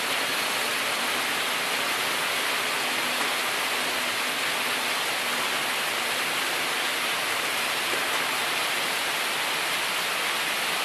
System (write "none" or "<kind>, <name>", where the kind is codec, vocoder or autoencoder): none